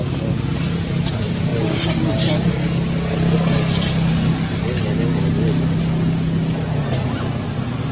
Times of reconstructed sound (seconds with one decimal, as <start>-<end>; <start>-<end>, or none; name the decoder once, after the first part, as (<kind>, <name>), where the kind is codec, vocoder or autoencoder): none